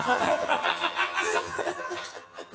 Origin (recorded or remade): remade